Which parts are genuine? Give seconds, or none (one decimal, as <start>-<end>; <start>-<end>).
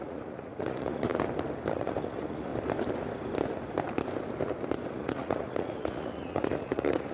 1.1-1.7; 2.5-4.9